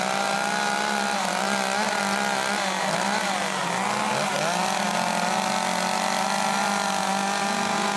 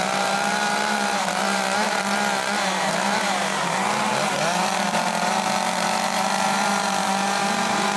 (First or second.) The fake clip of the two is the second